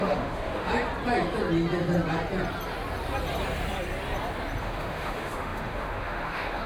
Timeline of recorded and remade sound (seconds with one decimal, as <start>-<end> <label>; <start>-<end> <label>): 0.0-0.7 remade; 0.7-4.6 recorded; 4.6-6.7 remade